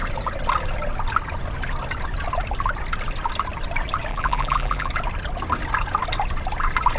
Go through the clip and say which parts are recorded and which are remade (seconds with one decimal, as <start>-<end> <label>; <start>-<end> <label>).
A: 0.0-4.1 recorded; 4.1-4.9 remade; 4.9-7.0 recorded